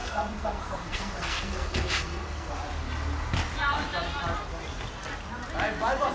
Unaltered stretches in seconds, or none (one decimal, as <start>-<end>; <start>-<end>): 2.5-6.1